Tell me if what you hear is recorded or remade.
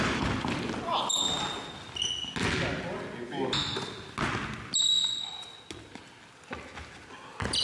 recorded